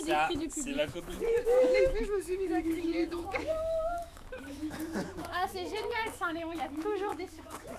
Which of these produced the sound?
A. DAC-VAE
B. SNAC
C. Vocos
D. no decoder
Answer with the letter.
A